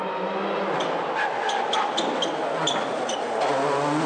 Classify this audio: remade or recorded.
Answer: recorded